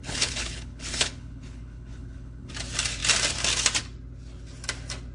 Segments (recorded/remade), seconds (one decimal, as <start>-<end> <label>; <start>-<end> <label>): 0.0-2.5 remade; 2.5-5.1 recorded